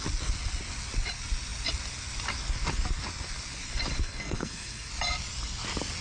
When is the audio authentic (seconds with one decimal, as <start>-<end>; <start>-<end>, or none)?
0.0-4.0; 4.9-6.0